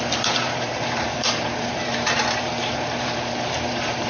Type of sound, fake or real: fake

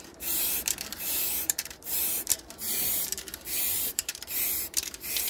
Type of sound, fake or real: fake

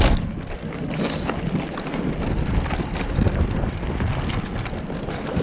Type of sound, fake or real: real